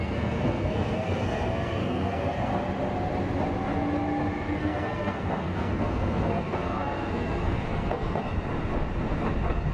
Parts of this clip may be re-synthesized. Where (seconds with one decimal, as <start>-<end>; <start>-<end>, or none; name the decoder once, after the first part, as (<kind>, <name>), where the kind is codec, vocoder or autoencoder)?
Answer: 0.0-2.5 (codec, SNAC); 4.5-8.2